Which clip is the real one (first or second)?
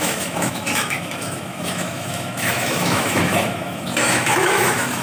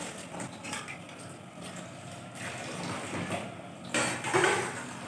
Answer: second